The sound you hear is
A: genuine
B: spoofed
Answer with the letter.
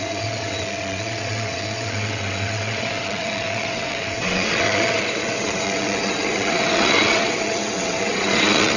B